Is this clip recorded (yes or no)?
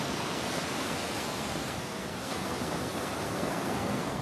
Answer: no